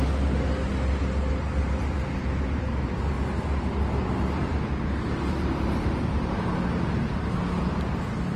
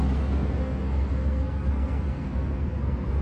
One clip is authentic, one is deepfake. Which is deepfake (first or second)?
second